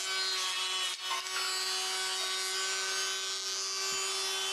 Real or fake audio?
real